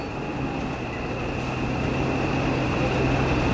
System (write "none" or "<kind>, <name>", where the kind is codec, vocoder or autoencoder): none